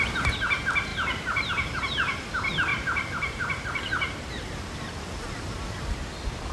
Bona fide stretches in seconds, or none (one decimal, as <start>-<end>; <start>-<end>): 0.0-0.9; 1.5-2.7; 5.1-6.5